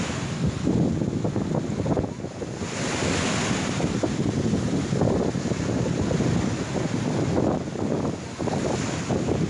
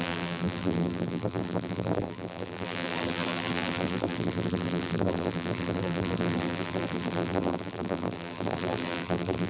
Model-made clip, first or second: second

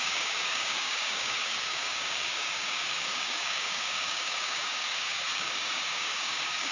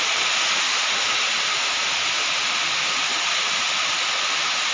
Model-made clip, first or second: first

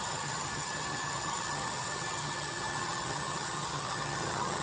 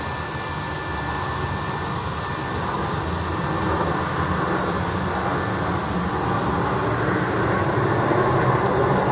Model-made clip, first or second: first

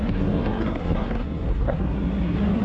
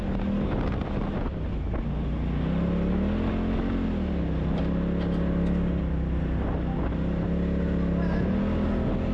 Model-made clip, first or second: first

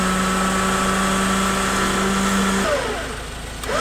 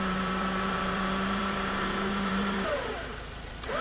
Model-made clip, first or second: second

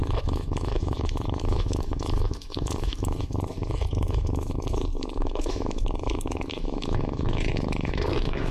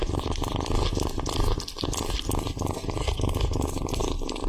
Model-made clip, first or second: first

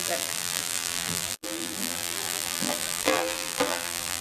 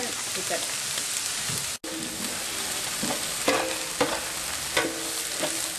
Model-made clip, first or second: first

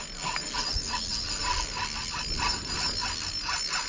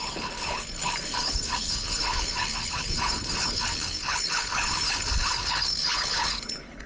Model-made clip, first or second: second